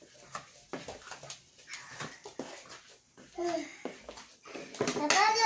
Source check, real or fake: real